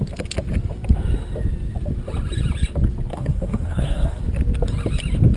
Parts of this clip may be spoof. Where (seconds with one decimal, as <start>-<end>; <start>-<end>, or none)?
3.1-4.2